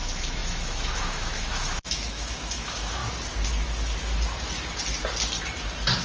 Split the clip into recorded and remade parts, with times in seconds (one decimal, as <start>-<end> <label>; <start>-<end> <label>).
0.0-3.0 remade; 3.0-6.0 recorded